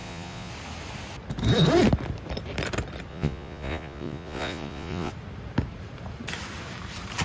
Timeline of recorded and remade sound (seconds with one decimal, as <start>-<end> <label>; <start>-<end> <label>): 0.0-0.5 remade; 0.5-3.1 recorded; 3.1-5.1 remade; 5.1-7.2 recorded